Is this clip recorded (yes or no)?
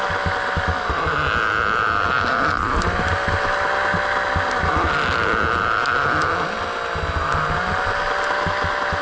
yes